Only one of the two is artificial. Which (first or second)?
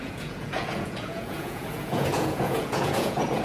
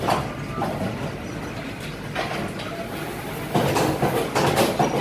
first